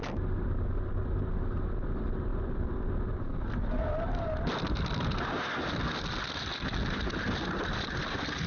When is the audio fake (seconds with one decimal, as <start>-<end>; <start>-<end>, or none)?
none

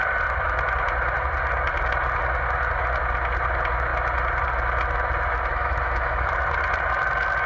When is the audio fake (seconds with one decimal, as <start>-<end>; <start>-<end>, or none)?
5.5-6.3

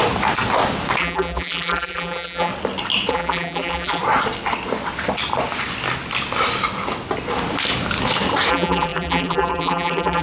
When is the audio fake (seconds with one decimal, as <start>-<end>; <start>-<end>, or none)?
1.0-2.5; 3.1-4.0; 8.5-10.2

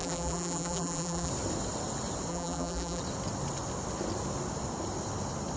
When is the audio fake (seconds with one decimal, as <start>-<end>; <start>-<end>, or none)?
0.0-1.3; 2.3-3.0

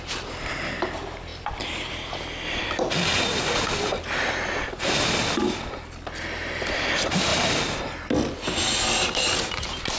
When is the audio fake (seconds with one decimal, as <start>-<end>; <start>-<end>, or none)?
none